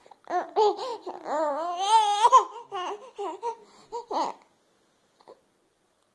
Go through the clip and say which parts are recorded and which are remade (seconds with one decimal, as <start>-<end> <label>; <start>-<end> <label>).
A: 0.0-6.1 recorded